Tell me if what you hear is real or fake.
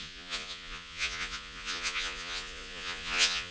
fake